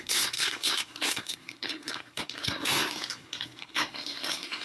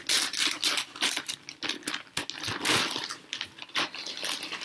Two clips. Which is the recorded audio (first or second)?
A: second